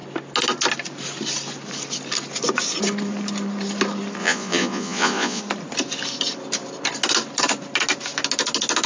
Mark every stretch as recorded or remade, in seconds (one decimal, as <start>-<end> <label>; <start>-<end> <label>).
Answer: 0.0-4.2 recorded; 4.2-5.4 remade; 5.4-8.9 recorded